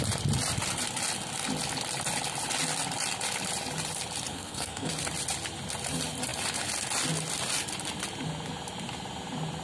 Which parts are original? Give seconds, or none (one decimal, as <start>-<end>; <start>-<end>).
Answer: 0.0-4.3; 4.9-9.6